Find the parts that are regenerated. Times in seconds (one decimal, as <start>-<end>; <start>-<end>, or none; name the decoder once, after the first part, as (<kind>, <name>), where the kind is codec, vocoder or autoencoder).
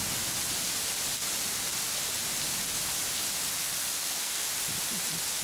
3.6-4.5 (codec, SNAC)